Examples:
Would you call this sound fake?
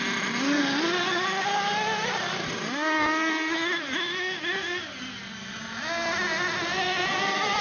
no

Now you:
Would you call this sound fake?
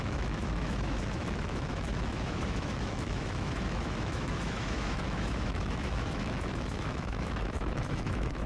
yes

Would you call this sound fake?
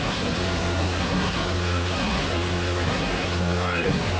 yes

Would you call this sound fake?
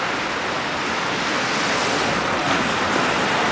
no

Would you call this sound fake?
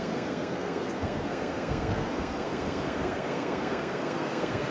yes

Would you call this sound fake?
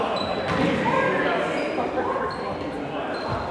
no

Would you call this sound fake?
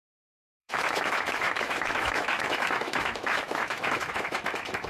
yes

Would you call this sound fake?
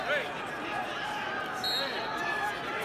no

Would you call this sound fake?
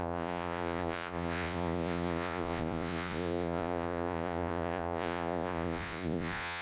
yes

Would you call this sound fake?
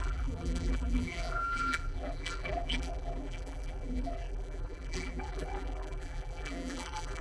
yes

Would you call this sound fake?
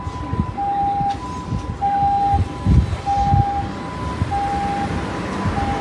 no